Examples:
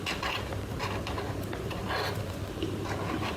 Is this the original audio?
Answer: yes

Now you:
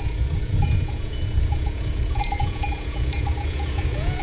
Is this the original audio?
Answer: no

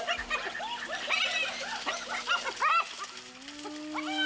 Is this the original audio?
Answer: yes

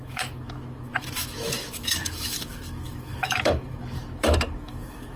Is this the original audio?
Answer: no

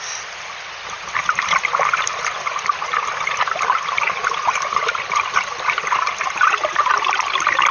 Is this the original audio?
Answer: yes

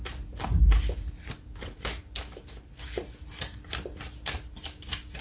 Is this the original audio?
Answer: yes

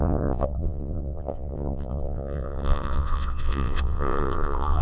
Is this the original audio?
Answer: no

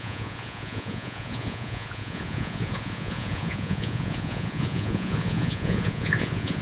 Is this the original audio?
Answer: no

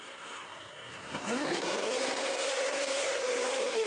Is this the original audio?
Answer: no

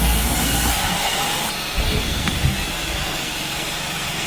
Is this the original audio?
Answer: no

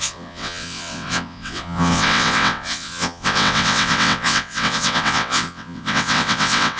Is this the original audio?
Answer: no